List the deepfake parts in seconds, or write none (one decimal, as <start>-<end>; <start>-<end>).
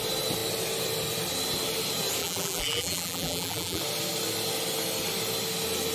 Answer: 2.2-3.8